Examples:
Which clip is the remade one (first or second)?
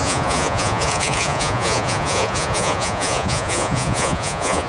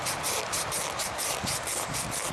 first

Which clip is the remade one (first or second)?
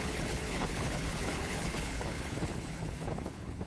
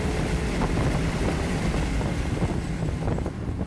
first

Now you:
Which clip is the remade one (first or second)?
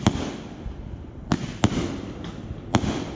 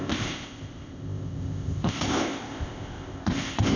second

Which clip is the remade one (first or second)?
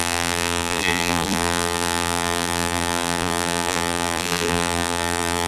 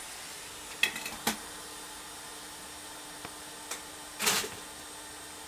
first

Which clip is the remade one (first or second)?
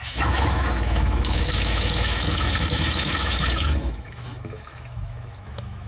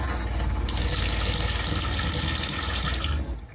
first